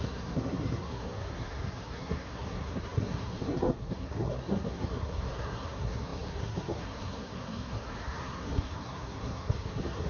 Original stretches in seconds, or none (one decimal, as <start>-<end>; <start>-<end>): none